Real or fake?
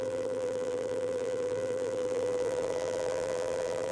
fake